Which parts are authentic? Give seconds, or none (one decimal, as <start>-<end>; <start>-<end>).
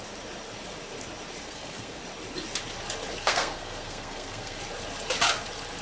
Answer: 0.0-1.4; 2.0-3.2; 4.6-5.8